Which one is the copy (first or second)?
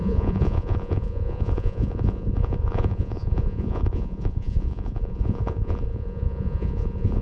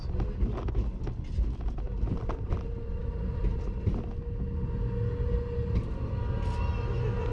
first